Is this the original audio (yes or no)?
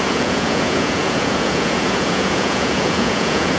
no